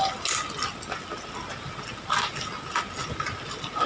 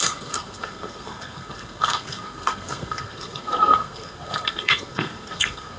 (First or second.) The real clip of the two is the first